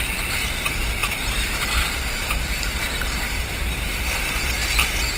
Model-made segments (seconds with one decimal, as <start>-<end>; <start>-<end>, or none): 1.0-4.1